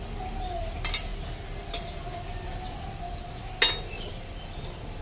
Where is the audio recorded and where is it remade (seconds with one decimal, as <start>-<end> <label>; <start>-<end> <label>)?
0.0-5.0 recorded